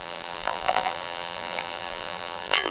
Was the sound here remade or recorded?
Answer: remade